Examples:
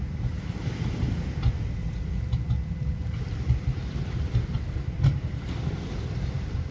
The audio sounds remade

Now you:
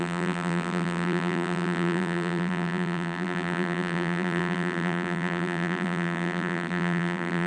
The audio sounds remade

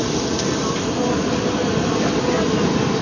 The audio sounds recorded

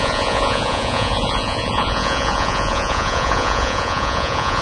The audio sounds remade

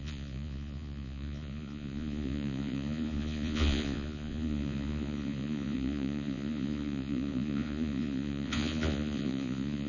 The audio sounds remade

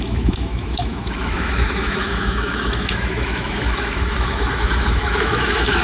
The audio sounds remade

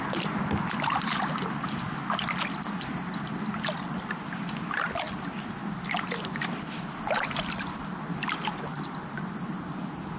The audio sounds recorded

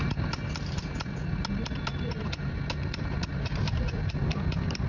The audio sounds recorded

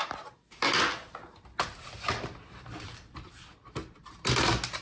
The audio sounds recorded